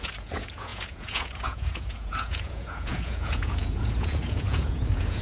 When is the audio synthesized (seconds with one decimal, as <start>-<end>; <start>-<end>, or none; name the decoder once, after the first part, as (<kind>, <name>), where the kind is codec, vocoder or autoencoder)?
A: 0.0-5.2 (vocoder, Vocos)